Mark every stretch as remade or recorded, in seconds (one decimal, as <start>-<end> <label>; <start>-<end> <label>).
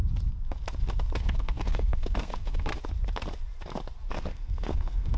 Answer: 0.0-1.2 recorded; 1.2-2.7 remade; 2.7-4.1 recorded; 4.1-5.2 remade